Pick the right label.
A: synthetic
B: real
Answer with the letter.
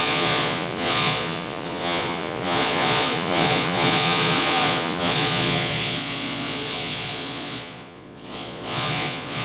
A